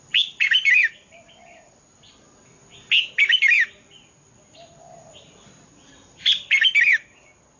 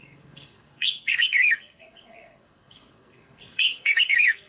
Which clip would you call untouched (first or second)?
first